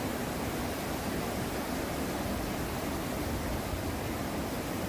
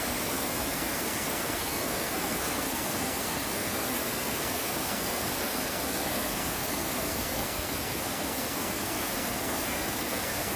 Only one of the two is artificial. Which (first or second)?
second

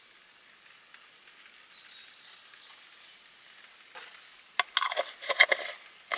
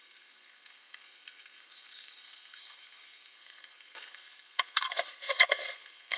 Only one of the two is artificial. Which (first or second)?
second